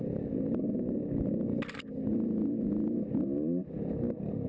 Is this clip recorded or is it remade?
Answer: recorded